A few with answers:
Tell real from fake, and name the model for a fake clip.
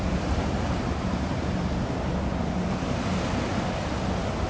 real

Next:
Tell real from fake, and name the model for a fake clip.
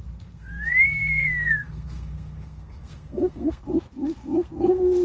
fake, codec, SNAC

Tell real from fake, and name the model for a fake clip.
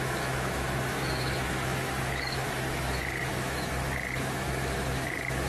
fake, autoencoder, DAC-VAE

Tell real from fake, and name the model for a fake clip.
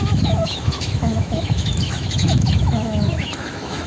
fake, autoencoder, DAC-VAE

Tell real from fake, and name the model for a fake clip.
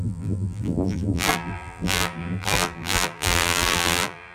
fake, vocoder, BigVGAN v2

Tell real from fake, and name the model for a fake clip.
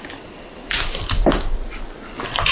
real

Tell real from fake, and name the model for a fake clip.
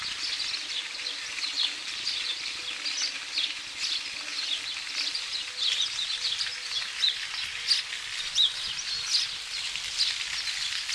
real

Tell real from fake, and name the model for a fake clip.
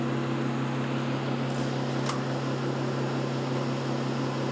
real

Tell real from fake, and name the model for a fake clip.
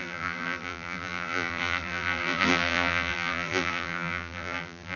fake, vocoder, BigVGAN v2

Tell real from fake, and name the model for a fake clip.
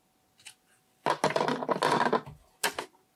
real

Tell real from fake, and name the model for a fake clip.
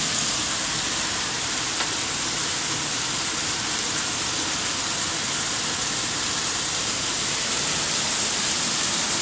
real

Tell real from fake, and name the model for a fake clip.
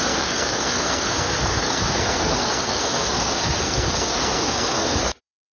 fake, codec, SNAC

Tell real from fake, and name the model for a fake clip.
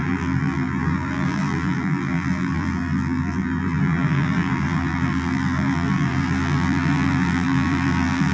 fake, vocoder, BigVGAN v2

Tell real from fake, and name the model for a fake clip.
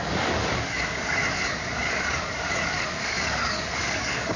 fake, codec, DAC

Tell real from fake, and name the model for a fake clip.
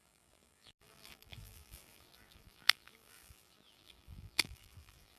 fake, vocoder, BigVGAN v2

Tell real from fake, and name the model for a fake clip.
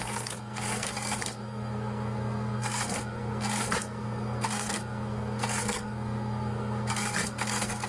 fake, codec, SNAC